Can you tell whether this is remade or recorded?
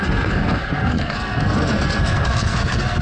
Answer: remade